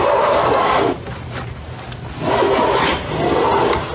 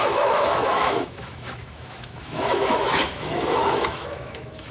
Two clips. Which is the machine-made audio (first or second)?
second